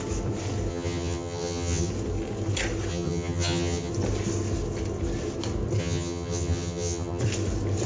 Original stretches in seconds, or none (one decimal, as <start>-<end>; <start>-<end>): 0.0-0.7; 1.9-2.9; 3.9-5.8; 7.2-7.9